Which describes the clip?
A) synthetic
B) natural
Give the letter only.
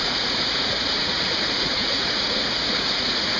A